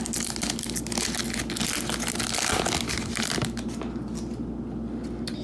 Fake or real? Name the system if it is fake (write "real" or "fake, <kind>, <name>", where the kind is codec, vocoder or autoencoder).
real